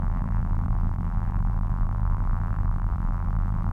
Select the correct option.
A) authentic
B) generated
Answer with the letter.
B